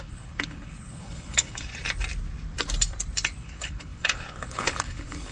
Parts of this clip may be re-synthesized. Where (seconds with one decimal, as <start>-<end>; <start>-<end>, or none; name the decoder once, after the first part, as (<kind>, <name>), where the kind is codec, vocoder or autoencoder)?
0.0-1.7 (codec, HILCodec); 3.4-5.3